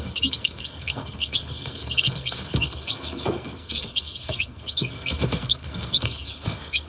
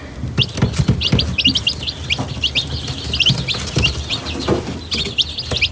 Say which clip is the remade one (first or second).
first